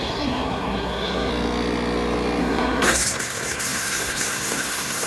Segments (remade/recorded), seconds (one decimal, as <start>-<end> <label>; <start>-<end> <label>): 0.0-1.3 remade; 1.3-2.4 recorded; 2.4-5.1 remade